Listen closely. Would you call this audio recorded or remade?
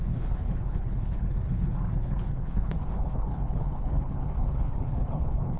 remade